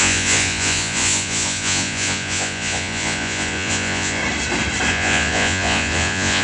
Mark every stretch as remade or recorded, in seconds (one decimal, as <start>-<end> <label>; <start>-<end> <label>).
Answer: 0.0-4.2 remade; 4.2-4.9 recorded; 4.9-6.4 remade

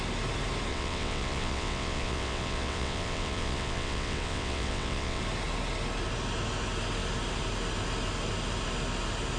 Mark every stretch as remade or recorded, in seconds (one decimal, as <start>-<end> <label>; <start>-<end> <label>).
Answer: 0.0-0.7 recorded; 0.7-5.2 remade; 5.2-9.4 recorded